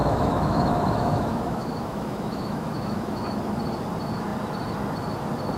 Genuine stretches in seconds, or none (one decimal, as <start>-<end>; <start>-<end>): 3.4-5.6